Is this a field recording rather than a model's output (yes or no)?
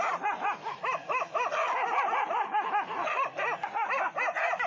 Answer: yes